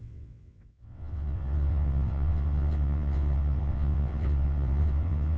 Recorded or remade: remade